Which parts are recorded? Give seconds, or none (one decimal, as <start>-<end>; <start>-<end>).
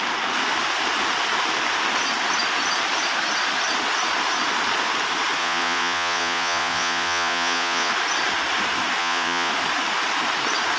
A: 0.0-5.4; 7.9-9.0; 9.5-10.8